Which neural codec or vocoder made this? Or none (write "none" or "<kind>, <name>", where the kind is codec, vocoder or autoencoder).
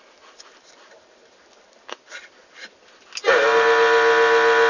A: none